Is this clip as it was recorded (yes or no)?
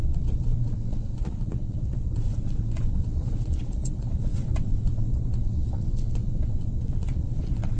no